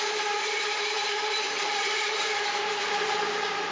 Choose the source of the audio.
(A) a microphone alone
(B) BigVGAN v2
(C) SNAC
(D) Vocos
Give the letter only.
B